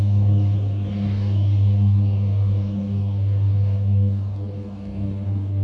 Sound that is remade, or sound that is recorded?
remade